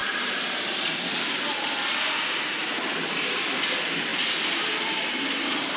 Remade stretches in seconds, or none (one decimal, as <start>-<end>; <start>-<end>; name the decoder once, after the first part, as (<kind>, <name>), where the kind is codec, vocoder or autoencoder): none